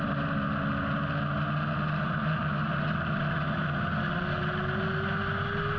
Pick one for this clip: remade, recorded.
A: recorded